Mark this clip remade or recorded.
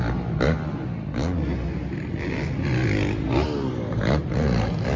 recorded